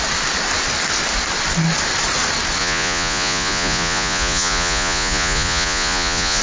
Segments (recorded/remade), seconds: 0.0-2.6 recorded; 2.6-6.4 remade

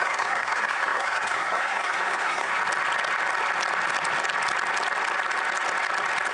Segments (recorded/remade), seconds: 0.0-2.5 remade; 2.5-6.3 recorded

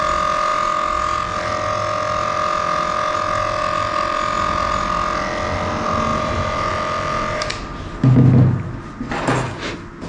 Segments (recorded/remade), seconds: 0.0-6.1 recorded; 6.1-6.7 remade; 6.7-10.1 recorded